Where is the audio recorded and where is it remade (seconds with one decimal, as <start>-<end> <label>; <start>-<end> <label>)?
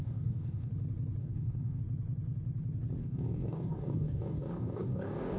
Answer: 0.0-0.7 remade; 0.7-1.2 recorded; 1.2-1.8 remade; 1.8-3.0 recorded; 3.0-5.4 remade